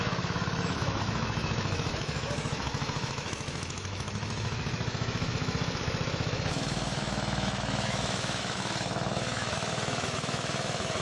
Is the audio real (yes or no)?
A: no